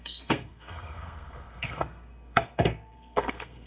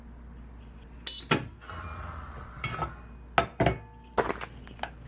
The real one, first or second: second